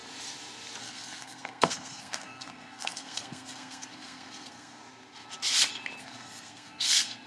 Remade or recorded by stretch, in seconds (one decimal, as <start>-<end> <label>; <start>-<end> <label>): 0.0-0.8 recorded; 0.8-4.8 remade; 4.8-6.0 recorded; 6.0-7.3 remade